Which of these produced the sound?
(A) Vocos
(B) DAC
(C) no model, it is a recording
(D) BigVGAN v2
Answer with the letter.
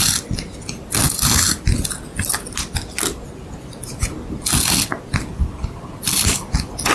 C